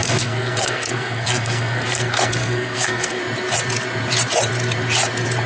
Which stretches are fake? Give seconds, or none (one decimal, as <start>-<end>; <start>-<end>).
0.0-3.2